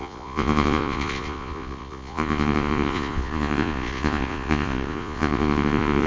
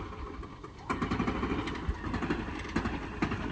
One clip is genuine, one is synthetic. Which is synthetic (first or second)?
first